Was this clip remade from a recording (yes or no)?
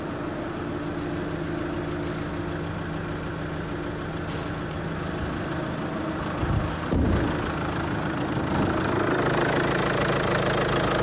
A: no